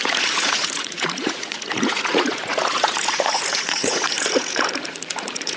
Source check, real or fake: fake